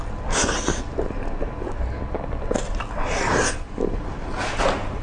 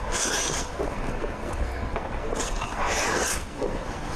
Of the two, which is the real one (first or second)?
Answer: first